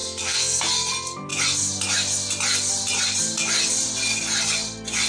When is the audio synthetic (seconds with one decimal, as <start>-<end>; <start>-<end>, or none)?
0.0-0.6